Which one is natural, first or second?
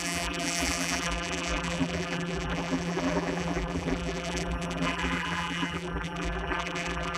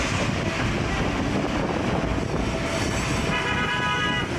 second